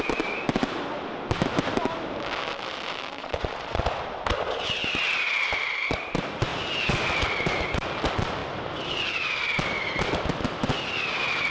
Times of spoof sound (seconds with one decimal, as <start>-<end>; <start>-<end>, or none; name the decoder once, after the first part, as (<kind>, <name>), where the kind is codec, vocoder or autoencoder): 3.2-3.8 (vocoder, Vocos)

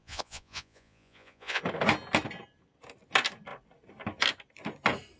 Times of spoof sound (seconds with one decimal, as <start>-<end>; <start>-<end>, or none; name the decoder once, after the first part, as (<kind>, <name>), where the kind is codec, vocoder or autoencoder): 0.0-1.6 (vocoder, Vocos)

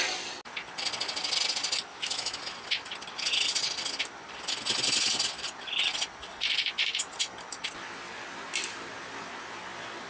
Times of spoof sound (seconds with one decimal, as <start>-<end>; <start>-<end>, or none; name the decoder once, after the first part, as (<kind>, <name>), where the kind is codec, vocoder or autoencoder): 1.9-2.4 (autoencoder, DAC-VAE)

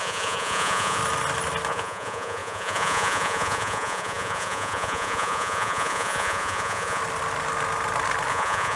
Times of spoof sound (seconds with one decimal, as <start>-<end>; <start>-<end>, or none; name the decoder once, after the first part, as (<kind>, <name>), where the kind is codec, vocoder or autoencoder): 0.0-1.0 (vocoder, Vocos); 1.7-7.0; 8.3-8.8